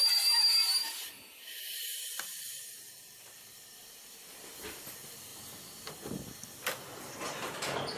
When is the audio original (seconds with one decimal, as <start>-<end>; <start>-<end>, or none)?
5.3-5.9